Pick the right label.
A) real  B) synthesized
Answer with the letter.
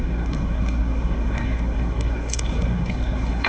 B